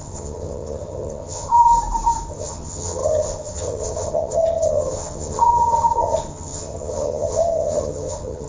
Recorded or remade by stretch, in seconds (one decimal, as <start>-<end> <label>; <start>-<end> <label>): 0.0-1.7 remade; 1.7-2.3 recorded; 2.3-8.5 remade